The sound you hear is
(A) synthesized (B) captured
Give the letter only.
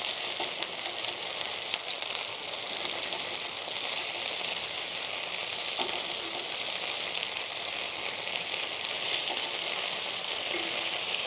B